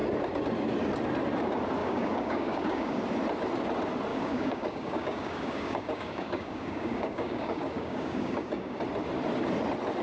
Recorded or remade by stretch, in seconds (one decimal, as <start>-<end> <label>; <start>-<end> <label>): 0.0-1.8 recorded; 1.8-3.0 remade; 3.0-4.1 recorded; 4.1-8.8 remade; 8.8-10.0 recorded